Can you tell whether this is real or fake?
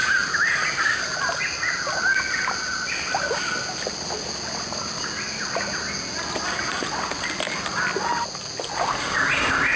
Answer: real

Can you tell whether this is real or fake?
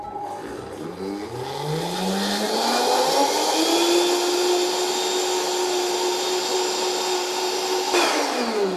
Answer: real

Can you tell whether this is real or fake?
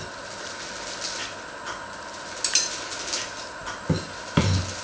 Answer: real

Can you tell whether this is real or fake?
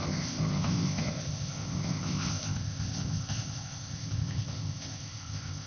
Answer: fake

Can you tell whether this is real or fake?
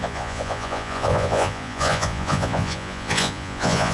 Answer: fake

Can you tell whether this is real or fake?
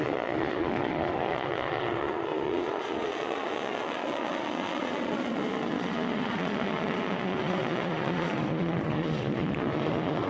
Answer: fake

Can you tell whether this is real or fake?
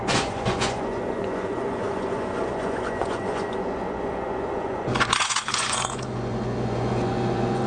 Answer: fake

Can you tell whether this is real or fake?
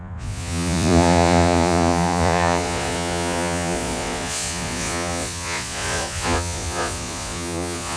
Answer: fake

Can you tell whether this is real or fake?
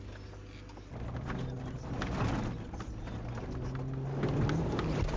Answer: real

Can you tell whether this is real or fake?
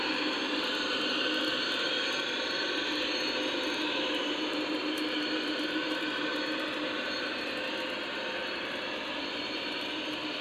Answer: fake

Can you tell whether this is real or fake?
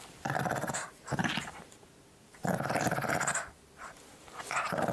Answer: real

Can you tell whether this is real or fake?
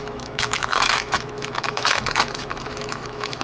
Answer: fake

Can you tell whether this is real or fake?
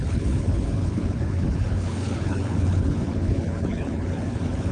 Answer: fake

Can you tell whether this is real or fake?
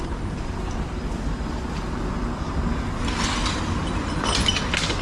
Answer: real